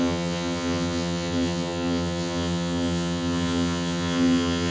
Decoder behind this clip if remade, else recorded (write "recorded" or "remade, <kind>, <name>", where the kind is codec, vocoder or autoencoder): remade, vocoder, HiFi-GAN